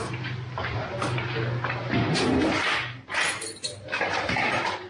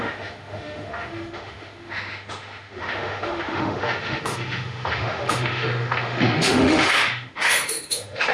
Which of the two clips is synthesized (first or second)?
second